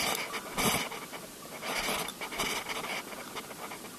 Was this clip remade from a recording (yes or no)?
no